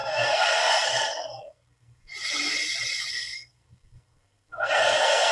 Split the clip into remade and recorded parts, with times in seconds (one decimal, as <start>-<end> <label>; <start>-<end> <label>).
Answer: 0.0-2.1 remade; 2.1-3.1 recorded; 3.1-5.3 remade